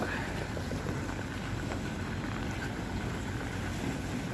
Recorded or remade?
recorded